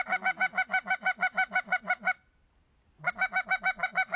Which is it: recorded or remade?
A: recorded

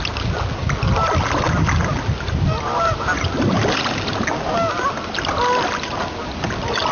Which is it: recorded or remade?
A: recorded